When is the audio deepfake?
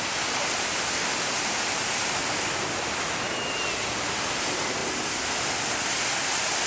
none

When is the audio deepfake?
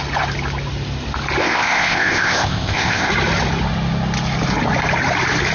1.4-3.1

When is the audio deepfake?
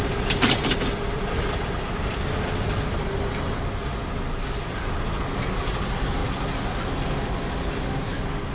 0.0-0.7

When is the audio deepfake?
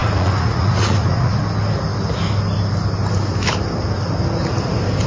0.0-1.4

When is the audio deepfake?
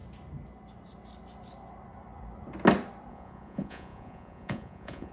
3.1-5.1